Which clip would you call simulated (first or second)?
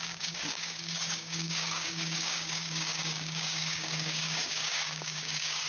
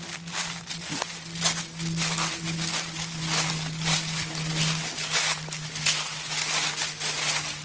first